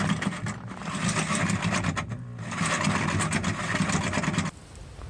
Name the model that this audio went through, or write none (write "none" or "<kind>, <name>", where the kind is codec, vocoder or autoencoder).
none